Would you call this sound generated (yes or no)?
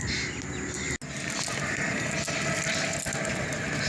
no